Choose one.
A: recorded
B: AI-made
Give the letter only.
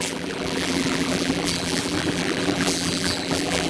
B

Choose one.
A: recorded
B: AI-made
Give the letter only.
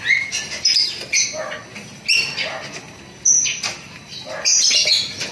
A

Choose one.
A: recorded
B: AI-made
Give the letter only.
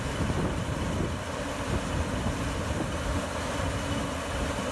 A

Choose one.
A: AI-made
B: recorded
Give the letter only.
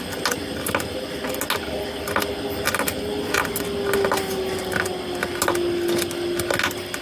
B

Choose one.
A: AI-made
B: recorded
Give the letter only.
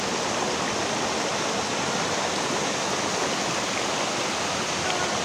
B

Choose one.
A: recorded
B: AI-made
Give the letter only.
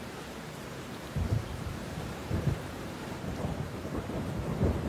B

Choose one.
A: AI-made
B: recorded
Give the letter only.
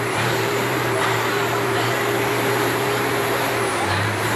A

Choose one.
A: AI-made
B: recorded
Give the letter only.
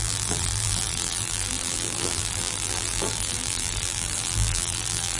A